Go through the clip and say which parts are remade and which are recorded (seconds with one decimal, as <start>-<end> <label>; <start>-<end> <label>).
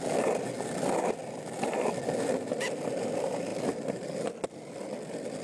0.0-5.4 recorded